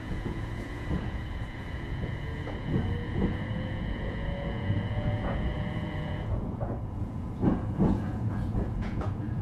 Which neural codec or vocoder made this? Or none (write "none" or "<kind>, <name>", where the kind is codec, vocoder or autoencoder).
vocoder, Vocos